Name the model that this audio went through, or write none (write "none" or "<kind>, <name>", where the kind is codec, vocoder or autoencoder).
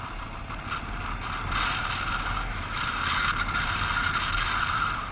none